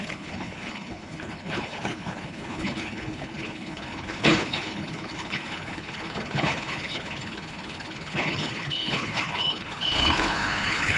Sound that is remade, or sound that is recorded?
remade